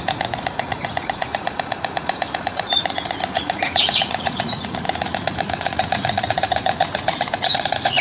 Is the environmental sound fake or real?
fake